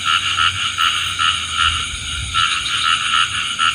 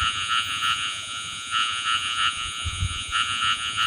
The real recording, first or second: first